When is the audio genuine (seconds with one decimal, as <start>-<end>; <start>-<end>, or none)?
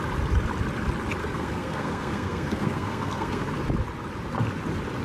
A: 0.0-1.2; 3.5-5.0